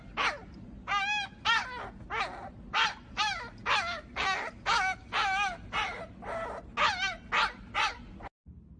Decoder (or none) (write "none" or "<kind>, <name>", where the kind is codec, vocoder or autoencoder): none